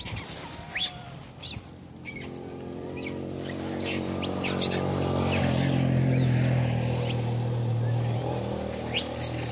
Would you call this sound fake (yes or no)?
no